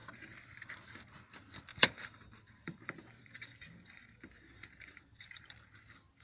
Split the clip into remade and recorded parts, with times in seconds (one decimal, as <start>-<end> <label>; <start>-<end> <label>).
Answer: 0.0-1.7 recorded; 1.7-5.4 remade; 5.4-6.2 recorded